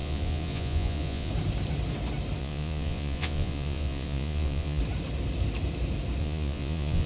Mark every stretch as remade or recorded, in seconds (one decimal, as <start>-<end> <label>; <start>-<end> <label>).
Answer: 0.0-1.3 remade; 1.3-2.4 recorded; 2.4-4.8 remade; 4.8-6.2 recorded; 6.2-7.1 remade